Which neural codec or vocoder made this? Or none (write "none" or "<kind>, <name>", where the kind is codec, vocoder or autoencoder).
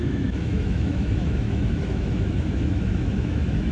autoencoder, DAC-VAE